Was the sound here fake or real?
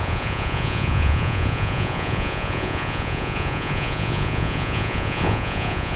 fake